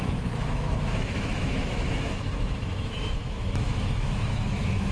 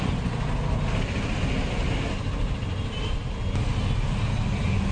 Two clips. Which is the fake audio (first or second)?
first